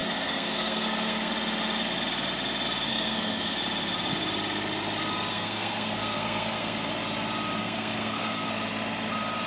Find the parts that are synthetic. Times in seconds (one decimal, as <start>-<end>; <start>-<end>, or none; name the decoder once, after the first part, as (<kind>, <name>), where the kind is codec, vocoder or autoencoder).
0.0-1.3 (codec, SNAC); 2.9-3.6; 5.3-6.9; 7.6-8.5